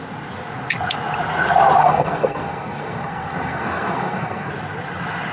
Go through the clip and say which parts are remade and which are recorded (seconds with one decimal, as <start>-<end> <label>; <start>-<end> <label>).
0.0-1.8 recorded; 1.8-4.5 remade; 4.5-5.3 recorded